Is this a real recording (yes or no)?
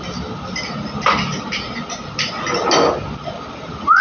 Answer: yes